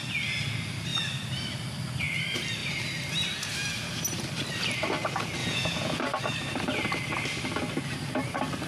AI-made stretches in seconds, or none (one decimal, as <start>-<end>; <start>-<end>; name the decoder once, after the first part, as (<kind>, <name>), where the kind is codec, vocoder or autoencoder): 5.4-6.0 (vocoder, Vocos)